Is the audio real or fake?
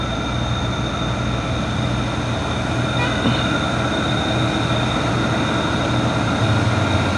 real